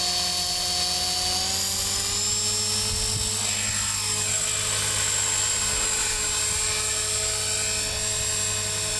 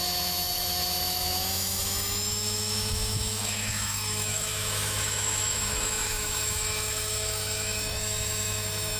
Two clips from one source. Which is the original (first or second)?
first